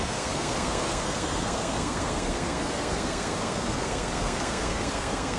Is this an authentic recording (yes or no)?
no